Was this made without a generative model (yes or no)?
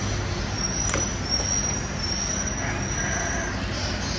yes